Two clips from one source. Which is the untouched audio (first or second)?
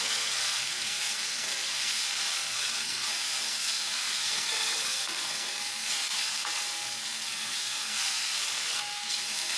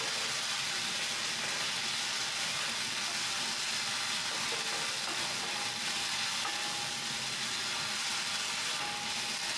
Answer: second